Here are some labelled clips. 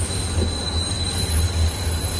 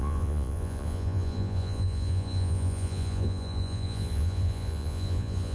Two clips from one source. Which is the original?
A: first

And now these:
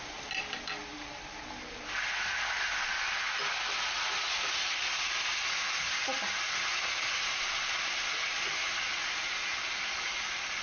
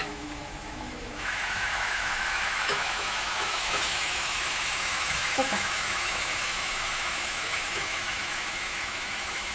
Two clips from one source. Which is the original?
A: first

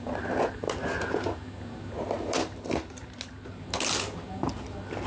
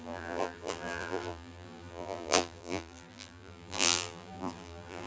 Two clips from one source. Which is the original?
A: first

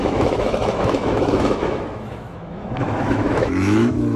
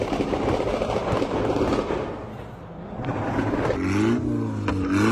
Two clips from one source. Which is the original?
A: second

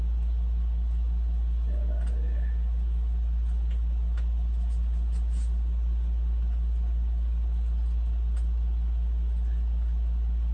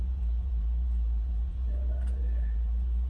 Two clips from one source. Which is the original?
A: first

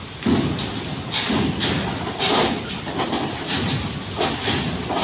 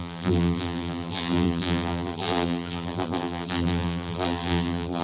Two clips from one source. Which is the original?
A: first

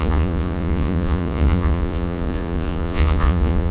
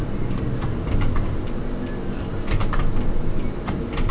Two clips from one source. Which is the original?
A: second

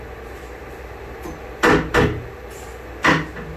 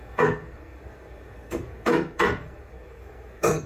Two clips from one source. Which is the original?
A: first